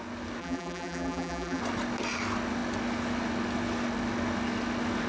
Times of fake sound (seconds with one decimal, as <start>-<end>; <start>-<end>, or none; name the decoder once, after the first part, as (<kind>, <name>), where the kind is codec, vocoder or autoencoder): 0.4-1.6 (vocoder, BigVGAN v2)

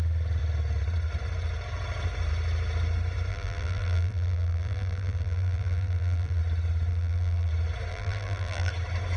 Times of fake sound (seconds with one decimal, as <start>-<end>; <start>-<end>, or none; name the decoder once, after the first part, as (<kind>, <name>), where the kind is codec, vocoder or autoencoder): 3.3-6.4 (vocoder, BigVGAN v2); 6.9-7.5; 7.9-8.7

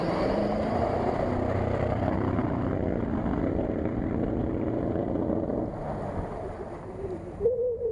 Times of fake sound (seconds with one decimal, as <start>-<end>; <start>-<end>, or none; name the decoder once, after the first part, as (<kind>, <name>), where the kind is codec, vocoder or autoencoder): 0.0-7.9 (vocoder, BigVGAN v2)

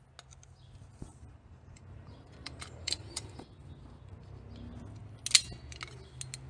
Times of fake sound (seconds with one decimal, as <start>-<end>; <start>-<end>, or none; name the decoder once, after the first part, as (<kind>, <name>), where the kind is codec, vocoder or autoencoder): 1.1-3.5 (vocoder, BigVGAN v2)

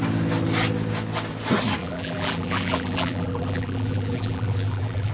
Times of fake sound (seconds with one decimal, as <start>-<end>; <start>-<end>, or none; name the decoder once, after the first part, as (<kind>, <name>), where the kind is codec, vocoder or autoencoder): 1.8-5.1 (vocoder, BigVGAN v2)

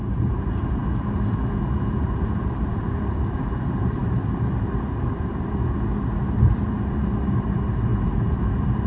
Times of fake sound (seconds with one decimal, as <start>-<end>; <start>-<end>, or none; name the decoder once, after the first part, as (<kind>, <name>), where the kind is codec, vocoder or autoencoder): 0.0-0.8 (vocoder, BigVGAN v2); 2.0-8.9